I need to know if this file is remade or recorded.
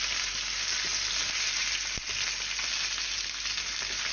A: recorded